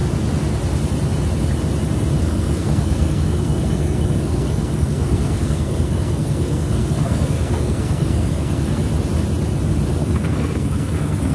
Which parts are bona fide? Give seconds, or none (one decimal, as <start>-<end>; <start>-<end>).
0.0-2.2; 8.8-9.9